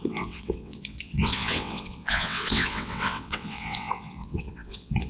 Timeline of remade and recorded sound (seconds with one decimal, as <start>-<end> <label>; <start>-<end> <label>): 0.0-5.1 remade